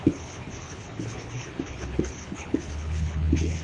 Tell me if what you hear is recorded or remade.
remade